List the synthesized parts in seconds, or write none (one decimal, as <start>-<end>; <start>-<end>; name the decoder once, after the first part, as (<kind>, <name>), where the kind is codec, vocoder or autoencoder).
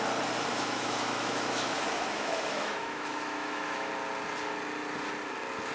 0.5-3.9 (autoencoder, DAC-VAE)